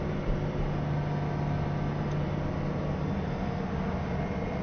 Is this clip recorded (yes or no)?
yes